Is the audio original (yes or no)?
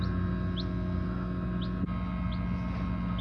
yes